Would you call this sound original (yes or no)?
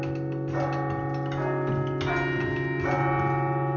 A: yes